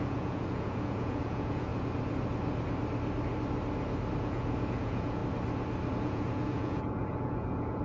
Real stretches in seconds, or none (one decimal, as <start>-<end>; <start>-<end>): 1.7-4.2; 5.2-6.0